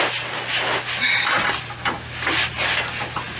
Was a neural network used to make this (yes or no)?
no